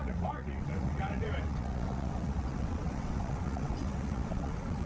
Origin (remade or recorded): remade